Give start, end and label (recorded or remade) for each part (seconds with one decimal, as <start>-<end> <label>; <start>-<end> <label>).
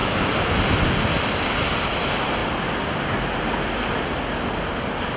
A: 0.0-5.2 recorded